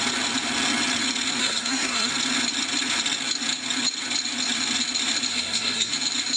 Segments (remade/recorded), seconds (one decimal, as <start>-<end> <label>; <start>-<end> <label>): 0.0-1.4 recorded; 1.4-2.1 remade; 2.1-5.3 recorded; 5.3-5.9 remade; 5.9-6.4 recorded